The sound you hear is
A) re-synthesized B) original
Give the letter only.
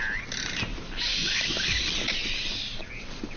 B